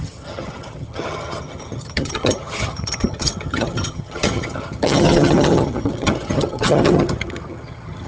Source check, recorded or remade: remade